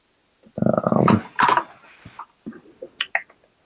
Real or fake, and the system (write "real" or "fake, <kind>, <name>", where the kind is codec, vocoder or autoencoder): real